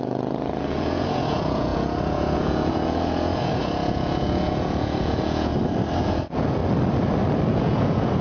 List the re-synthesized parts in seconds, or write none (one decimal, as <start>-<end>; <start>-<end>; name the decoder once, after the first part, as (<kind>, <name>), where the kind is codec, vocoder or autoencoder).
0.0-5.5 (vocoder, Vocos); 6.0-6.6; 7.5-8.2